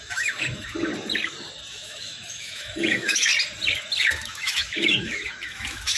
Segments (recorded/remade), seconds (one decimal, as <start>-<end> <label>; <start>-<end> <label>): 0.0-0.9 remade; 0.9-1.7 recorded; 1.7-3.3 remade; 3.3-4.0 recorded; 4.0-6.0 remade